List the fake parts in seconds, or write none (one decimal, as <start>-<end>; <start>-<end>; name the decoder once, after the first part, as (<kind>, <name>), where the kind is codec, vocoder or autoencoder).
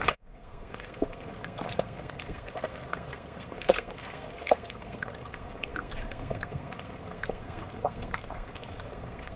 0.0-9.4 (codec, SNAC)